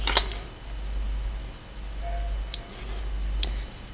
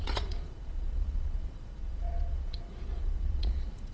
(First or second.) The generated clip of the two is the second